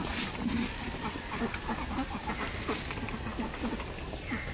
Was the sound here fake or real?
real